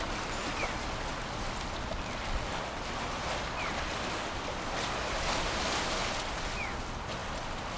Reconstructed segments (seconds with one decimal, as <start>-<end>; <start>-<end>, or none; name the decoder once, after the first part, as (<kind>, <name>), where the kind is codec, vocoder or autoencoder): none